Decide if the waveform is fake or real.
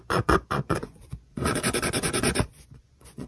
fake